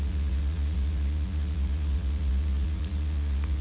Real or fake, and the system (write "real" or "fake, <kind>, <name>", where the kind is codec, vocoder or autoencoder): fake, vocoder, Vocos